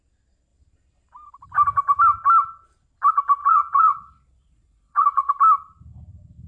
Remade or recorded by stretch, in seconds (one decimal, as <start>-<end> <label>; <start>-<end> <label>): 0.0-3.4 recorded; 3.4-5.3 remade; 5.3-6.5 recorded